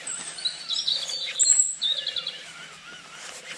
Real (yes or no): yes